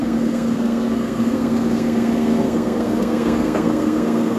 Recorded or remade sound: remade